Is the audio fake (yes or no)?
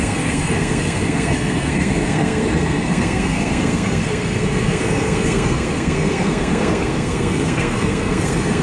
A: yes